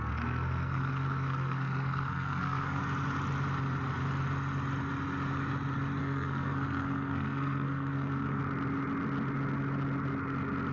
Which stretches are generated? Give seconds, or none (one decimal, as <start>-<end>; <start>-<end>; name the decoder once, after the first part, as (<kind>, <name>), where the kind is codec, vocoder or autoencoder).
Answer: 0.0-2.8 (codec, SNAC); 6.0-8.4